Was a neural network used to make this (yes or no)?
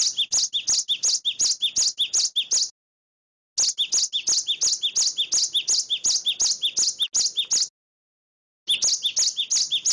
no